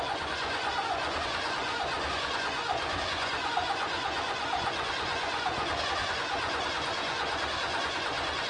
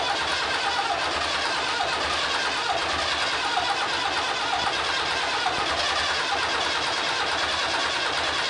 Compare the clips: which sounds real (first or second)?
second